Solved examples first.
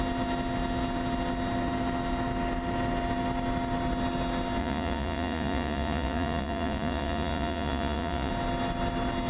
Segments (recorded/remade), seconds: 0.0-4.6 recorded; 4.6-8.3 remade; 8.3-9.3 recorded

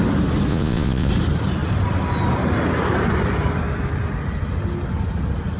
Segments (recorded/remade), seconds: 0.0-0.5 recorded; 0.5-1.1 remade; 1.1-5.6 recorded

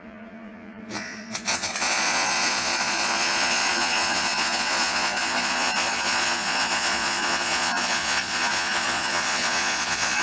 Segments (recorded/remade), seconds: 0.0-10.2 remade